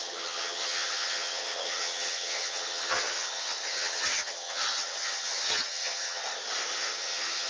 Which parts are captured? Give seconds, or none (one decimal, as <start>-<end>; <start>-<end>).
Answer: 6.2-6.7